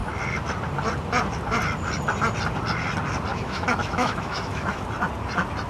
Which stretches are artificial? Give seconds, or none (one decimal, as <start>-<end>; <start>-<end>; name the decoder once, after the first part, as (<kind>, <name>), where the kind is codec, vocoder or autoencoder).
3.3-4.8 (autoencoder, DAC-VAE)